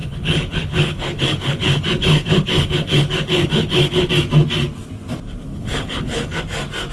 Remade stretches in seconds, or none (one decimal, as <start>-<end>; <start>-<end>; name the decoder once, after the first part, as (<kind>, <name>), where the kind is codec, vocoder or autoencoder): 0.0-4.1 (codec, HILCodec); 5.5-6.4